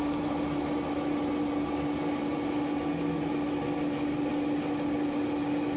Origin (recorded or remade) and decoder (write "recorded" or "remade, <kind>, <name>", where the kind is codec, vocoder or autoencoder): recorded